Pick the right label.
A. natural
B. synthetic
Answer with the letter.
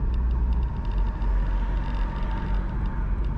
A